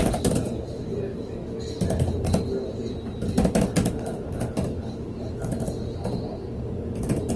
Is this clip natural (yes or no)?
yes